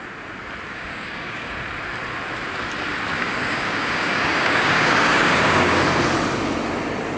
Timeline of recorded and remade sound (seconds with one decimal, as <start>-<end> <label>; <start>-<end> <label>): 0.0-0.7 recorded; 0.7-1.6 remade; 1.6-3.1 recorded; 3.1-5.8 remade; 5.8-7.2 recorded